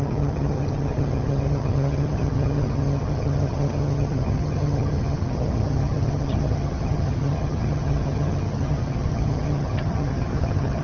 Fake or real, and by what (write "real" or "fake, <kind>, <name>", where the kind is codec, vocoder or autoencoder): fake, vocoder, HiFi-GAN